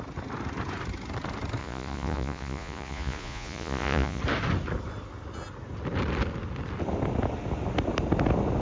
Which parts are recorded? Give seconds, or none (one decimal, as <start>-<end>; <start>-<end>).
0.0-1.6; 4.2-8.6